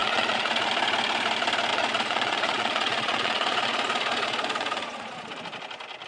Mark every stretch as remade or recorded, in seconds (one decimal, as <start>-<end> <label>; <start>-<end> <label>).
0.0-0.7 remade; 0.7-1.7 recorded; 1.7-5.3 remade; 5.3-6.1 recorded